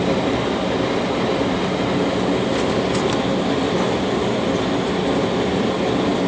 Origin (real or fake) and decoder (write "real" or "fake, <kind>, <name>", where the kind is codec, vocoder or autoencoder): real